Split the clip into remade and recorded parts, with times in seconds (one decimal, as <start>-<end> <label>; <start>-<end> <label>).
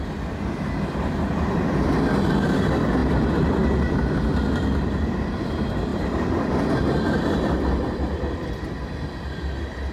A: 0.0-5.9 recorded; 5.9-6.7 remade; 6.7-9.9 recorded